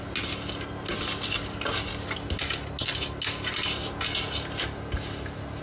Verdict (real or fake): real